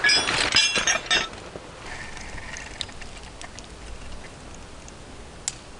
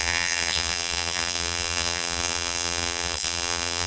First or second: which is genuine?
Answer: first